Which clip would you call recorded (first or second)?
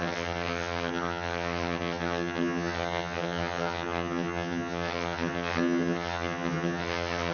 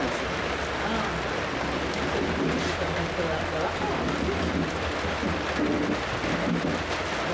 second